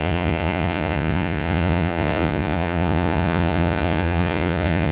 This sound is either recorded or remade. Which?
remade